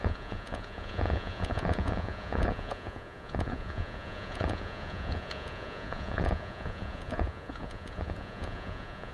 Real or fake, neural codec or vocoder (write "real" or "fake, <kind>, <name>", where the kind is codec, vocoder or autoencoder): fake, vocoder, Vocos